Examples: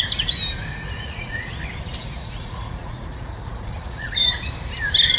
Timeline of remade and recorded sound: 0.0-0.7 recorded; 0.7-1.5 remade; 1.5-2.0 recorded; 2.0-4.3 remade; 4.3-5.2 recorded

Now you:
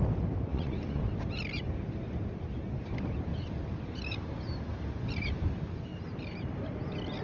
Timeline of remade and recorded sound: 0.0-0.5 recorded; 0.5-1.0 remade; 1.0-7.2 recorded

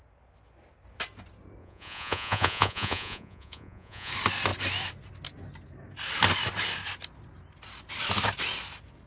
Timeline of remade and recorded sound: 0.0-1.6 recorded; 1.6-4.1 remade; 4.1-9.1 recorded

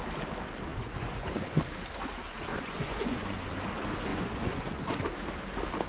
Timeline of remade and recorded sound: 0.0-0.7 recorded; 0.7-1.6 remade; 1.6-2.5 recorded; 2.5-3.5 remade; 3.5-4.1 recorded; 4.1-5.0 remade; 5.0-5.9 recorded

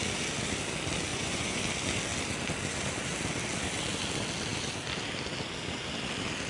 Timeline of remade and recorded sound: 0.0-1.1 recorded; 1.1-1.6 remade; 1.6-6.5 recorded